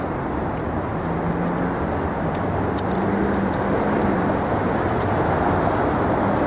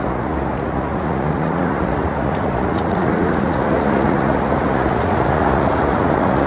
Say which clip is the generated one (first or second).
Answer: second